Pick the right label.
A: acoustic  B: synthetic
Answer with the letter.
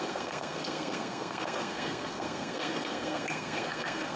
B